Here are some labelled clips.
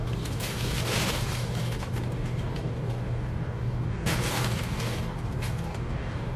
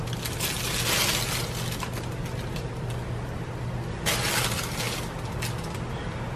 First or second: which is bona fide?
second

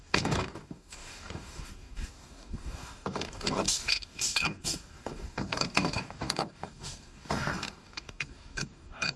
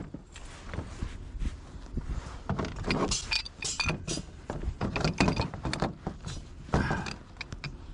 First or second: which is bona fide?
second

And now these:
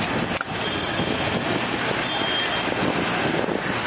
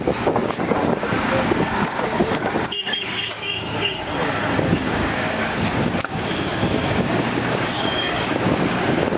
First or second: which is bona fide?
first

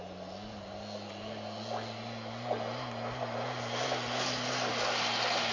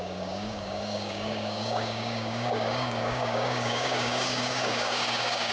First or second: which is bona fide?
first